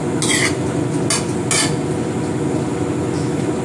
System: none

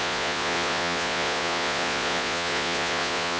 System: vocoder, Vocos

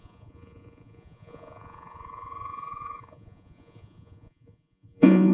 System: vocoder, Vocos